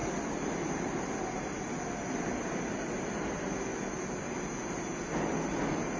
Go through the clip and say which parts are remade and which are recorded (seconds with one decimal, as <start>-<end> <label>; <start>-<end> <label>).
0.0-6.0 recorded